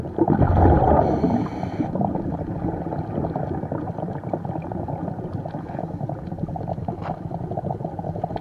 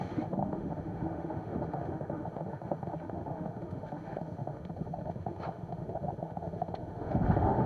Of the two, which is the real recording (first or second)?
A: first